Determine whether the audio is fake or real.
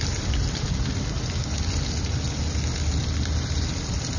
real